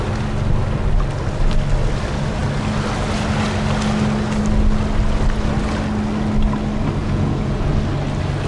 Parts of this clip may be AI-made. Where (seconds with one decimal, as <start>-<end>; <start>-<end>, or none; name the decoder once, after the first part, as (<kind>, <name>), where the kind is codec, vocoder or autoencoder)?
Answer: 7.0-7.7 (vocoder, Vocos)